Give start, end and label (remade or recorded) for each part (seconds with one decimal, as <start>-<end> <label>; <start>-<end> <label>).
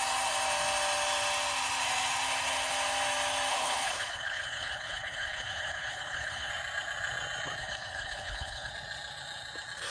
0.0-3.5 recorded; 3.5-6.5 remade; 6.5-7.6 recorded; 7.6-8.7 remade; 8.7-9.9 recorded